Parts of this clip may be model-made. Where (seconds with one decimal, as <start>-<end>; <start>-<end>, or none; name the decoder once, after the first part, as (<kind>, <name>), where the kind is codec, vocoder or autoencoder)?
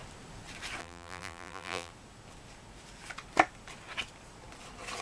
0.8-1.9 (vocoder, BigVGAN v2)